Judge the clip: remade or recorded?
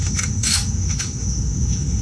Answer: remade